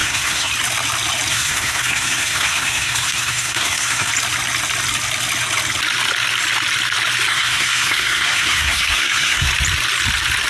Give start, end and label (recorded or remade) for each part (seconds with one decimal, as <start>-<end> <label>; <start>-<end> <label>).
0.0-0.5 remade; 0.5-1.3 recorded; 1.3-4.1 remade; 4.1-7.3 recorded; 7.3-9.5 remade; 9.5-10.5 recorded